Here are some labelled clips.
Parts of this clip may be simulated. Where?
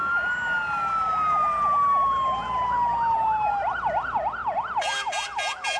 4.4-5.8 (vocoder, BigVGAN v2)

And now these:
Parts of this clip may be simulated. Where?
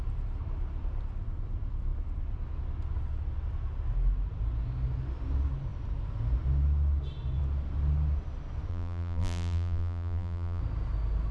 8.7-10.6 (vocoder, BigVGAN v2)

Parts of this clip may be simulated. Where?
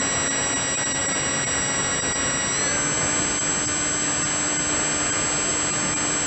none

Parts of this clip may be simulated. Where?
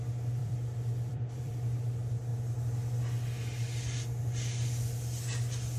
0.4-1.5 (vocoder, BigVGAN v2)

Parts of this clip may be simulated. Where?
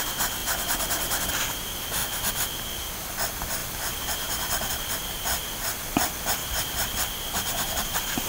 3.6-4.7 (vocoder, BigVGAN v2); 6.4-8.3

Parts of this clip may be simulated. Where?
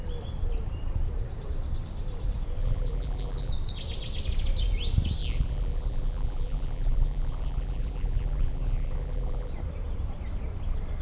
2.6-3.5 (vocoder, BigVGAN v2); 5.2-9.5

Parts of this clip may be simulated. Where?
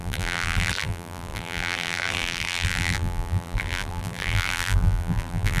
0.0-5.6 (vocoder, BigVGAN v2)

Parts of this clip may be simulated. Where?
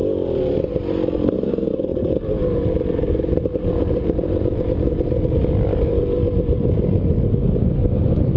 1.9-5.4 (vocoder, BigVGAN v2)